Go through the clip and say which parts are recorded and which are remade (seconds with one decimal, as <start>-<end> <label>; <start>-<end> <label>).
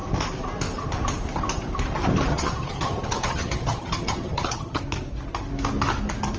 0.0-2.3 recorded; 2.3-4.8 remade; 4.8-6.4 recorded